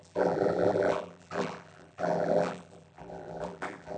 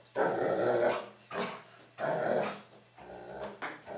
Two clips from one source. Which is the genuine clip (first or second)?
second